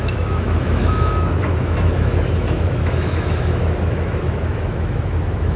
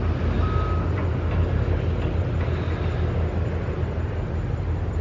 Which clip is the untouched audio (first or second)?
second